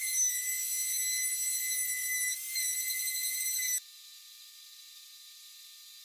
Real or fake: real